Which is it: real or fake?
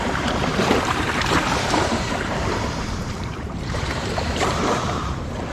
fake